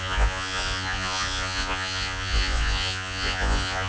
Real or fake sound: fake